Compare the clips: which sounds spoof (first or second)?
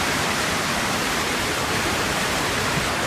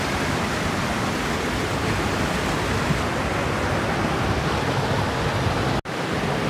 first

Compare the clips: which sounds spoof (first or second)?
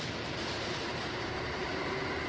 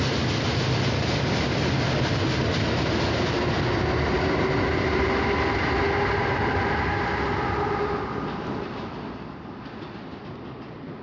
first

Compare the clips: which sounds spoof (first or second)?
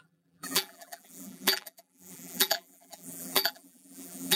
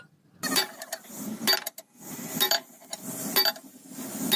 first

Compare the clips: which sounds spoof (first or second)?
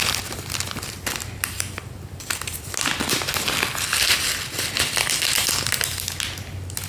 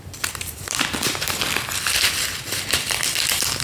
second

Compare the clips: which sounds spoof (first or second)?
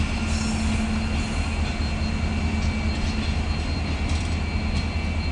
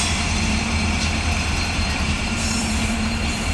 second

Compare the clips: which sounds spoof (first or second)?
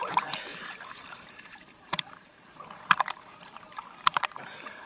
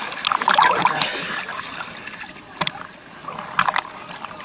first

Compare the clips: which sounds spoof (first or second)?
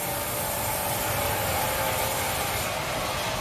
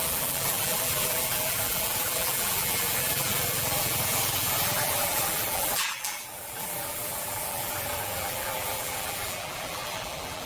second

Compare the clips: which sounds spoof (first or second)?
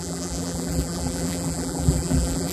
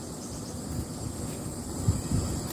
first